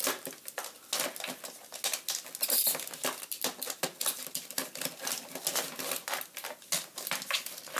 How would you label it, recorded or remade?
recorded